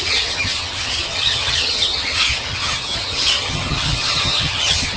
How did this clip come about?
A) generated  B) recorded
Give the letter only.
A